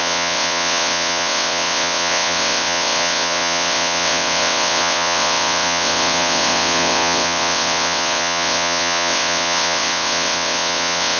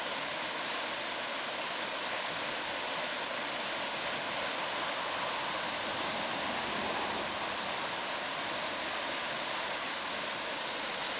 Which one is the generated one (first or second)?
first